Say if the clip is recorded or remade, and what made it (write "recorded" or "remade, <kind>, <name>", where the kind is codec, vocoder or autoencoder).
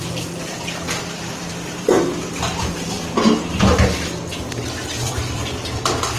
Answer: remade, vocoder, BigVGAN v2